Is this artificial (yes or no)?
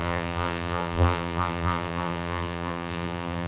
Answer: yes